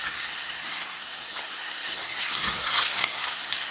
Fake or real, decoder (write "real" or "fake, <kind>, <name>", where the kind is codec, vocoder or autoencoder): fake, codec, SNAC